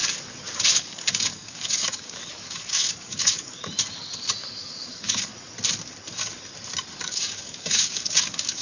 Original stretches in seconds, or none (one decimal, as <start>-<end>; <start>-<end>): 0.0-0.7; 3.6-4.6; 5.3-7.0